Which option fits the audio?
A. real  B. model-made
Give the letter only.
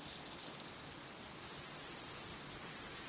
A